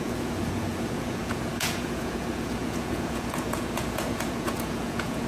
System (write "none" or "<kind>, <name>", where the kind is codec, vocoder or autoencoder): vocoder, Vocos